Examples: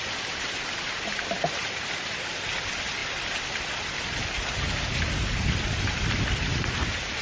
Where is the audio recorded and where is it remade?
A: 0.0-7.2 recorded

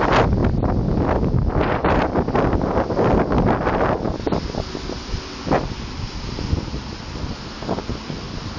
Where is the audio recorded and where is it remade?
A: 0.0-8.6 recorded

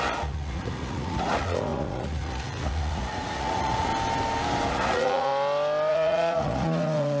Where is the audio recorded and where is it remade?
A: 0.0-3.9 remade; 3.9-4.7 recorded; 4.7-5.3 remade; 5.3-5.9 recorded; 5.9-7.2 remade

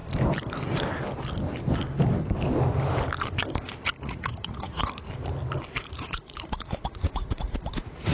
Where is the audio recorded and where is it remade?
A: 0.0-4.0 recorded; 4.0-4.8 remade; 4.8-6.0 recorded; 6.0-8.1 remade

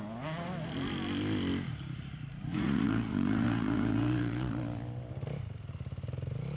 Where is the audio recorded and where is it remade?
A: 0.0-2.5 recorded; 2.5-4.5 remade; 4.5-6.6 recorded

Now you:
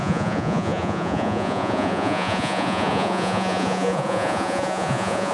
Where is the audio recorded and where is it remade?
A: 0.0-5.3 remade

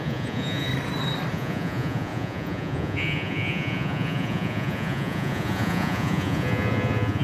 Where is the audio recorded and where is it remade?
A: 0.0-0.7 remade; 0.7-1.3 recorded; 1.3-7.2 remade